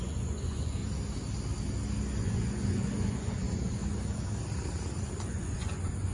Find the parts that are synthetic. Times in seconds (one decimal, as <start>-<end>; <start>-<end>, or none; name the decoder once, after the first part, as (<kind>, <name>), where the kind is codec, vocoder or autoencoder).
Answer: 0.0-0.8 (vocoder, Vocos); 2.2-3.8; 5.2-6.1